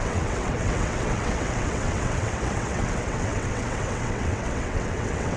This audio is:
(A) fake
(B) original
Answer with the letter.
A